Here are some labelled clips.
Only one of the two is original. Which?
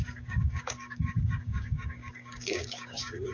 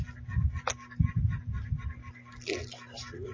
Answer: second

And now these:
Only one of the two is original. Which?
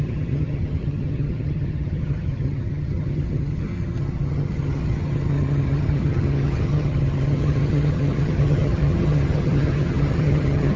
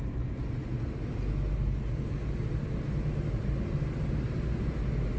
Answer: second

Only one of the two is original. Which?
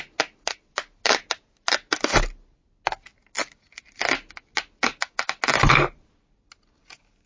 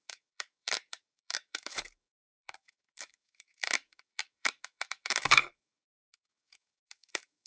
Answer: first